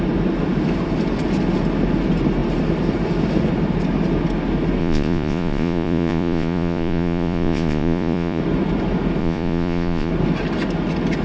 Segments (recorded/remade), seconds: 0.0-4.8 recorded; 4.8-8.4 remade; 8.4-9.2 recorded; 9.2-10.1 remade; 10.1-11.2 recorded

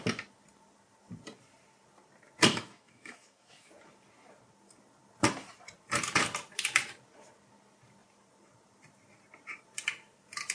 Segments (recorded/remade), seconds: 0.0-2.5 recorded; 2.5-3.7 remade; 3.7-10.5 recorded

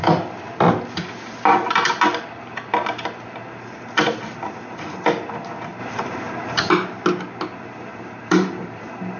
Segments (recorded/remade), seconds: 0.0-5.8 recorded; 5.8-6.7 remade; 6.7-7.9 recorded; 7.9-9.2 remade